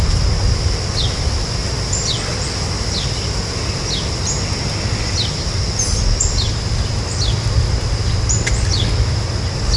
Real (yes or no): yes